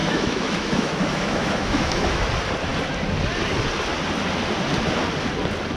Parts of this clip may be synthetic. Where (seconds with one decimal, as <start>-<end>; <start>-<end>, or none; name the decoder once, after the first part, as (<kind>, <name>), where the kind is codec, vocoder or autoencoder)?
0.0-2.3 (autoencoder, DAC-VAE)